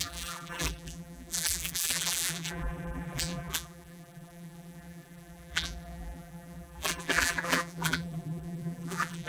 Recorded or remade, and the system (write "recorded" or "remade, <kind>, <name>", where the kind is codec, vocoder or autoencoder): remade, vocoder, BigVGAN v2